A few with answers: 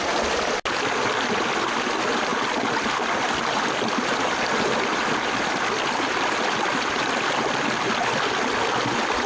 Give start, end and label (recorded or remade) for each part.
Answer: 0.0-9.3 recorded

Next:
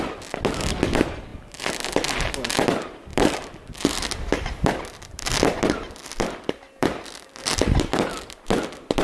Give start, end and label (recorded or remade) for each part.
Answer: 0.0-3.1 recorded; 3.1-3.6 remade; 3.6-6.8 recorded; 6.8-7.9 remade; 7.9-9.0 recorded

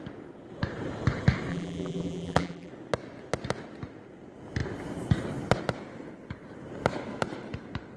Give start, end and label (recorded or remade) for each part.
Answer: 0.0-1.5 recorded; 1.5-2.7 remade; 2.7-8.0 recorded

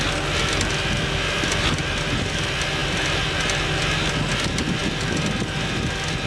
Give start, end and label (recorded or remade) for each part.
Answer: 0.0-6.3 recorded

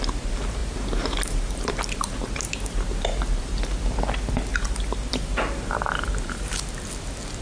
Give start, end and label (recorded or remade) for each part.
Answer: 0.0-0.6 recorded; 0.6-3.6 remade; 3.6-4.5 recorded; 4.5-6.5 remade; 6.5-7.4 recorded

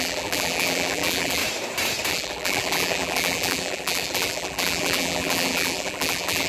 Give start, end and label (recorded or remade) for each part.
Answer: 0.0-1.4 remade; 1.4-2.1 recorded; 2.1-6.5 remade